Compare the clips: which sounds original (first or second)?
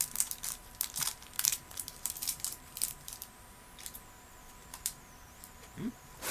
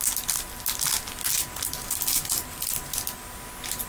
second